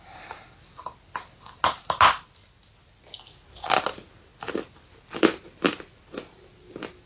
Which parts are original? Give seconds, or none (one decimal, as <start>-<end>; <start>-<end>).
0.0-4.3; 6.2-7.1